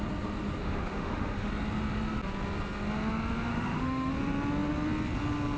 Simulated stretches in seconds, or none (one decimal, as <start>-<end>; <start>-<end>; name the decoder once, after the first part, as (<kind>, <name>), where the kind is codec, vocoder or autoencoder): 0.6-1.5 (autoencoder, DAC-VAE); 3.5-4.1